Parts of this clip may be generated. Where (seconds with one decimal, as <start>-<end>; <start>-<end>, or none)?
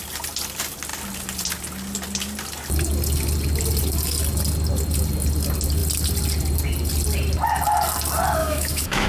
8.4-9.1